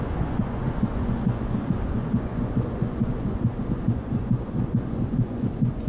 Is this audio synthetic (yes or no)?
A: yes